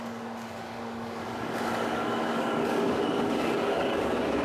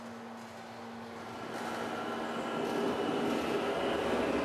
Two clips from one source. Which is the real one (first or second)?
second